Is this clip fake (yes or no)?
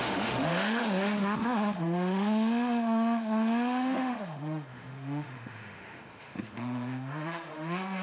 yes